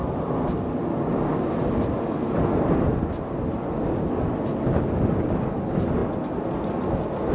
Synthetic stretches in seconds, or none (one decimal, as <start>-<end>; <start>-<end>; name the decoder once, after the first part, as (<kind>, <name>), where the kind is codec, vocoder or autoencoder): none